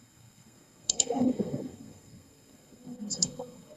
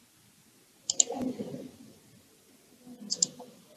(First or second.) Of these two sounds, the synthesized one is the first